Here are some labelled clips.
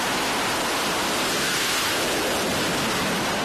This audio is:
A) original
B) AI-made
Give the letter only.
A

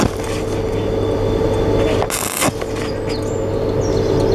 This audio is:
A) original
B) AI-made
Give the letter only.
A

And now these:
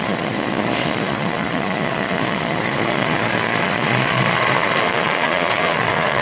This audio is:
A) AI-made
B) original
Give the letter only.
A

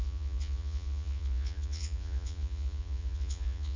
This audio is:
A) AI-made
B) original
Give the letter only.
A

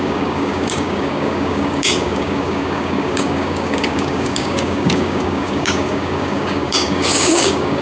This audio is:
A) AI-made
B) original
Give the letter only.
A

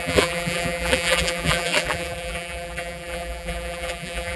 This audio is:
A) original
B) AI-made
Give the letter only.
B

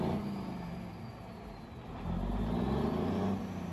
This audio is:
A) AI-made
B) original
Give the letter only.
B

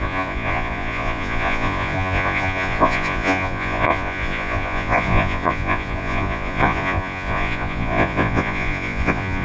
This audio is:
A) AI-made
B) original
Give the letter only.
A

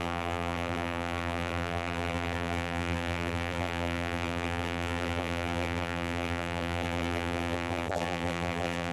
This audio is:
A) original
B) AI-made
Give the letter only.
B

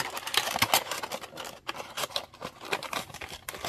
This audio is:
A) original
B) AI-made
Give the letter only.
B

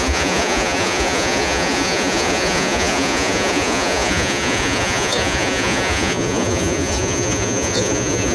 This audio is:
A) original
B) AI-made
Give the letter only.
B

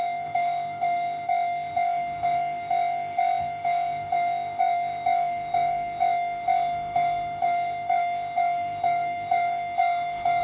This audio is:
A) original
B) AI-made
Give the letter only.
B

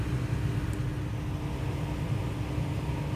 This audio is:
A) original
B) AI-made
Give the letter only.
A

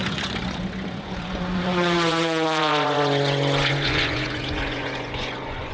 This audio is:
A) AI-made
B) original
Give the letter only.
A